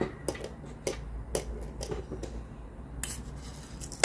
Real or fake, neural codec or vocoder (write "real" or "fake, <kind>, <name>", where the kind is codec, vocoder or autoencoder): real